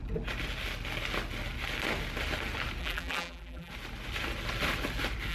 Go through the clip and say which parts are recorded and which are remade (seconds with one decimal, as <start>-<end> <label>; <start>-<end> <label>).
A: 0.0-2.8 recorded; 2.8-3.7 remade; 3.7-5.3 recorded